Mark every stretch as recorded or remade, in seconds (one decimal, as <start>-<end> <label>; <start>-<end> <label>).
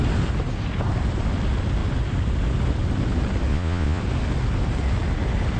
0.0-3.5 recorded; 3.5-4.0 remade; 4.0-5.6 recorded